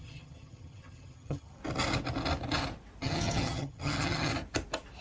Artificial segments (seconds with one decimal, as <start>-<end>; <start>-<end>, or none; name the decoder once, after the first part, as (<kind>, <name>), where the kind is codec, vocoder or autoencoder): 0.0-1.6 (vocoder, HiFi-GAN); 3.0-4.3